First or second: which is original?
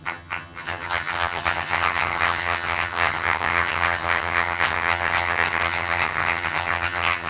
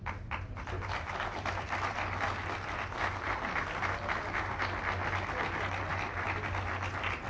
second